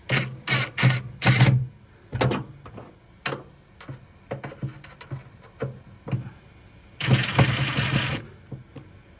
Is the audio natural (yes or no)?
yes